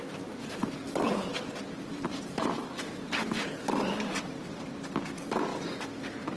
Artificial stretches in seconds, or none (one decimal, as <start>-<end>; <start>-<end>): 0.6-4.4